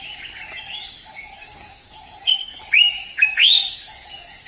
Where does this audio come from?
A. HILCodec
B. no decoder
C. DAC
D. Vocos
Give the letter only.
C